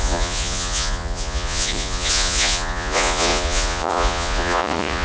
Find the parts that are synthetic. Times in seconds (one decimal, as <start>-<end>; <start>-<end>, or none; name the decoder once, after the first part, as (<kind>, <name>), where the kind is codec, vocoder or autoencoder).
0.0-5.0 (vocoder, Vocos)